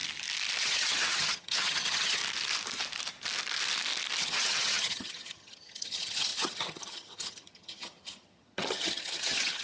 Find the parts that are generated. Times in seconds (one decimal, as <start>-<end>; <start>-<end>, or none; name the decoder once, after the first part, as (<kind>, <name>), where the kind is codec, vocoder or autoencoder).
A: 0.6-2.2 (vocoder, HiFi-GAN); 4.2-9.6